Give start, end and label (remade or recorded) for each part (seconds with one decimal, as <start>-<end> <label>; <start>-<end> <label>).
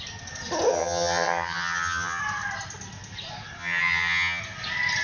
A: 0.0-0.7 recorded; 0.7-2.2 remade; 2.2-3.6 recorded; 3.6-4.4 remade; 4.4-5.0 recorded